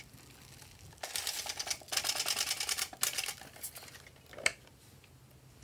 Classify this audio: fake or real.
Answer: real